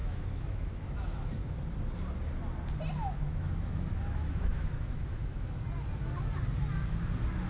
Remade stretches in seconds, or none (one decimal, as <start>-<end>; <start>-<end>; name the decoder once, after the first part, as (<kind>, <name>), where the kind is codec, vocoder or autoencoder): 0.0-1.6 (autoencoder, DAC-VAE); 3.0-5.6

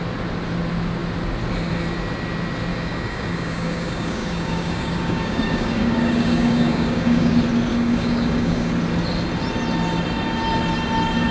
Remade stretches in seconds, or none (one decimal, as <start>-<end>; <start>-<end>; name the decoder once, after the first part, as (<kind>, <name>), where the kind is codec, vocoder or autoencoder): 2.7-7.3 (codec, DAC); 7.7-8.7

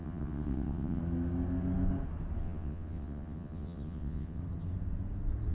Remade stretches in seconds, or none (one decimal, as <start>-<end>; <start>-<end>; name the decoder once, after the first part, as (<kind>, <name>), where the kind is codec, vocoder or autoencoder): 0.0-1.0 (vocoder, WaveNeXt); 2.4-4.4

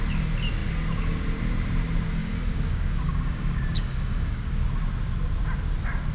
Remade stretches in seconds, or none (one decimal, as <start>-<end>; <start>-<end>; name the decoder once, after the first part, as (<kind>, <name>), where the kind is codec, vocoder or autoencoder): 2.2-4.7 (codec, DAC)